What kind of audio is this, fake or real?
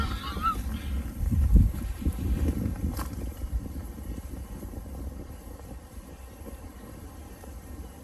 fake